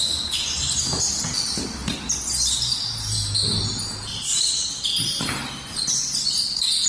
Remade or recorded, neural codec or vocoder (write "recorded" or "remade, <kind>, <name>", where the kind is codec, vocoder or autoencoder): recorded